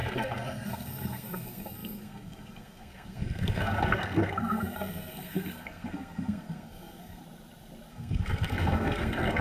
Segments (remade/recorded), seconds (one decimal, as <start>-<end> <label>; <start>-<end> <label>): 0.0-7.2 remade; 7.2-7.9 recorded; 7.9-9.4 remade

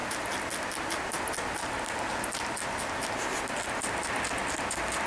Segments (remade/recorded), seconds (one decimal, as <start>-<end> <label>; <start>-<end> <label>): 0.0-5.1 recorded

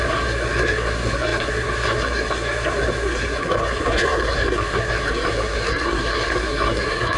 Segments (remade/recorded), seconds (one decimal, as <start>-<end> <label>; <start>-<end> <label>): 0.0-7.2 remade

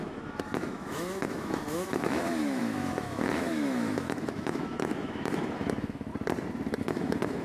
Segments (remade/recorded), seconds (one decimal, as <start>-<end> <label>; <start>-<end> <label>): 0.0-6.1 remade; 6.1-6.8 recorded; 6.8-7.4 remade

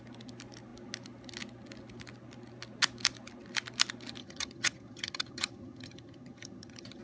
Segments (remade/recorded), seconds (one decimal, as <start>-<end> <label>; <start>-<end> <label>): 0.0-4.2 recorded; 4.2-7.0 remade